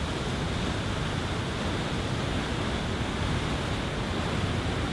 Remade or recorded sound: recorded